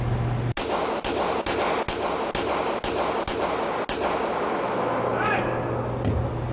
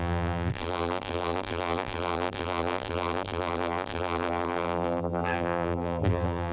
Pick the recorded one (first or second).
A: first